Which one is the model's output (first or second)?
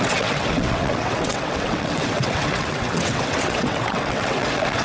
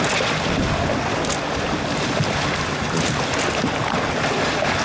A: first